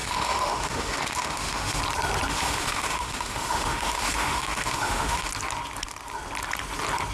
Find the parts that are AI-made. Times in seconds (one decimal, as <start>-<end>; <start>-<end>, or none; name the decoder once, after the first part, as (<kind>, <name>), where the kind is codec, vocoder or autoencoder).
0.0-1.8 (autoencoder, DAC-VAE); 2.3-5.3